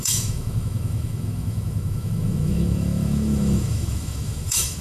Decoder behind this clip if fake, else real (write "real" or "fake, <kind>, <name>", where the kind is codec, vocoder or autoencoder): fake, autoencoder, DAC-VAE